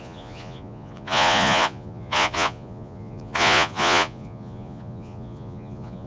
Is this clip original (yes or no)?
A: no